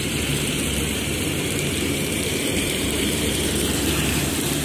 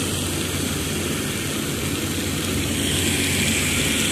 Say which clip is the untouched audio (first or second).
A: second